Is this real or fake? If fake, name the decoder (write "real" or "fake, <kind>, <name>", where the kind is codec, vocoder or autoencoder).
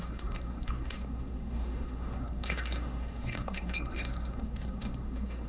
fake, codec, SNAC